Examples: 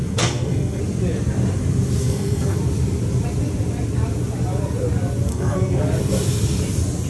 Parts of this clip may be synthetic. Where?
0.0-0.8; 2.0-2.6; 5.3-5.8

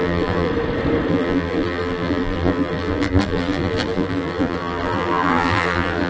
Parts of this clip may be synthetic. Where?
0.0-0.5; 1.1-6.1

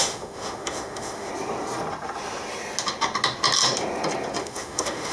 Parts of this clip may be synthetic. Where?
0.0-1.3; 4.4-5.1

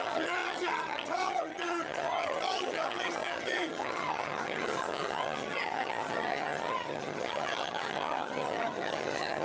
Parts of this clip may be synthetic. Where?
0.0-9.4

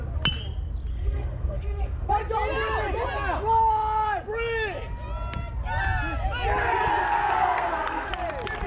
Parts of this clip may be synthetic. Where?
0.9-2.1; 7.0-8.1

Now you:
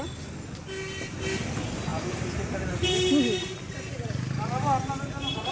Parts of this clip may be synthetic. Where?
none